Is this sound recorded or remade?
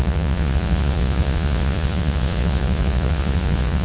remade